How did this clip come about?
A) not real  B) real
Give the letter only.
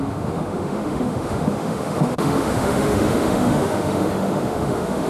A